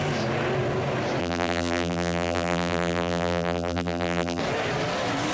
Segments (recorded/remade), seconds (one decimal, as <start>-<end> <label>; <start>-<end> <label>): 0.0-1.2 recorded; 1.2-4.4 remade; 4.4-5.3 recorded